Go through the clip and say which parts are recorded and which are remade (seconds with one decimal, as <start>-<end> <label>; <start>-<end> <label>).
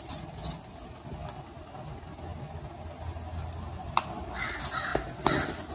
0.0-5.7 recorded